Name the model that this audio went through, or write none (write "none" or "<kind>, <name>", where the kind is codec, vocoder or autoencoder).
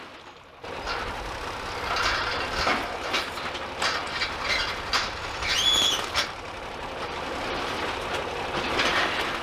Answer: none